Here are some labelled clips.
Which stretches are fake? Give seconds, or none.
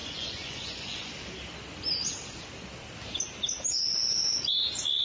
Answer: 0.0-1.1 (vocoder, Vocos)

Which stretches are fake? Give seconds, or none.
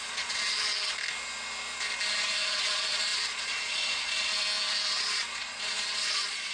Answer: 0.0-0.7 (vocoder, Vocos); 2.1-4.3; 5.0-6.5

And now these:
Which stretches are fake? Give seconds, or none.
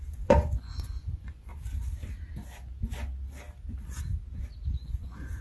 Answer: 0.0-1.5 (vocoder, Vocos); 4.7-5.4